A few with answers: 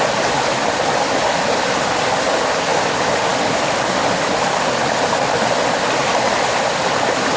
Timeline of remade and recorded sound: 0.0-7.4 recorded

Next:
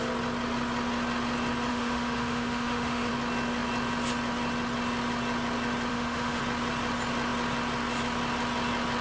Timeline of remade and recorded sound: 0.0-1.7 recorded; 1.7-3.1 remade; 3.1-5.9 recorded; 5.9-6.4 remade; 6.4-9.0 recorded

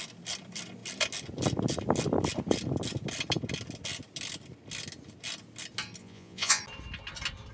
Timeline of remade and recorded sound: 0.0-6.0 recorded; 6.0-6.6 remade; 6.6-7.5 recorded

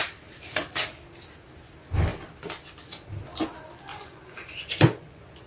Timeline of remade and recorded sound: 0.0-3.9 recorded; 3.9-5.5 remade

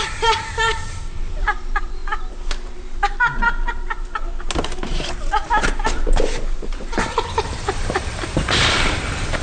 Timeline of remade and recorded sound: 0.0-2.0 remade; 2.0-6.4 recorded; 6.4-9.4 remade